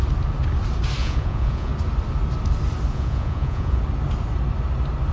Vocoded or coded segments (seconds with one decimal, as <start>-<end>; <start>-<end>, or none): 1.0-1.7; 2.9-3.8